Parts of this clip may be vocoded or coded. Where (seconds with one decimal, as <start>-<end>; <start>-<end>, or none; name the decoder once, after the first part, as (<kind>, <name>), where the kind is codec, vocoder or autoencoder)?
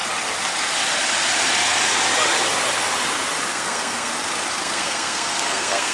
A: 3.5-4.1 (codec, SNAC); 4.6-5.9